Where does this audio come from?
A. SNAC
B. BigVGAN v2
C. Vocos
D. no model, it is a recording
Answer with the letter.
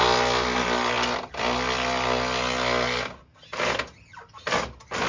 D